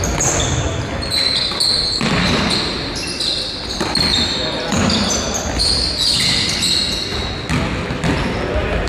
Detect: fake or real real